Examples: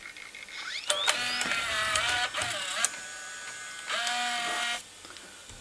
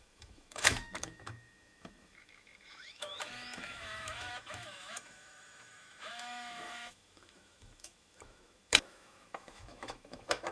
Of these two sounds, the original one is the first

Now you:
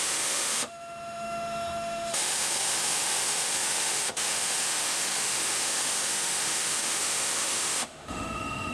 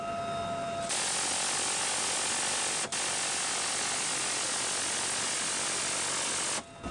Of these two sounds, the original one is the second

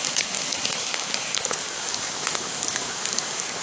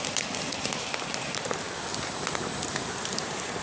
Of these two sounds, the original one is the second